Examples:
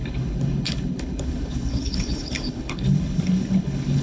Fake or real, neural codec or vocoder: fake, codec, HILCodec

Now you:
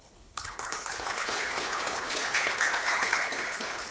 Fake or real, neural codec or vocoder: fake, codec, HILCodec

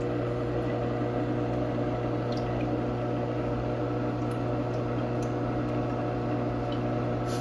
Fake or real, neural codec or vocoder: real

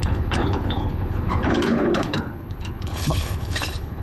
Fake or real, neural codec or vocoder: fake, codec, HILCodec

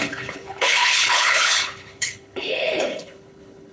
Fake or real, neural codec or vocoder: fake, codec, HILCodec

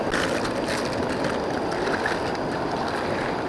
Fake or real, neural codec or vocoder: real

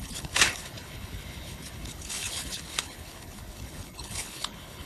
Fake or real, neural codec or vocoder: fake, codec, HILCodec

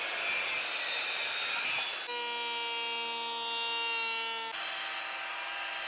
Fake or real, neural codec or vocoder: real